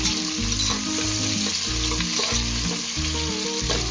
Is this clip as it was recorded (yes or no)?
yes